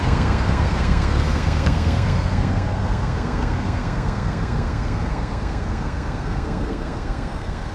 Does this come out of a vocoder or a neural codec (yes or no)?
yes